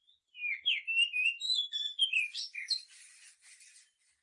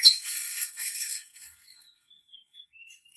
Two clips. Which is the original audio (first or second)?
first